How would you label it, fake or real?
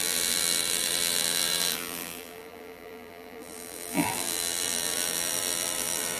fake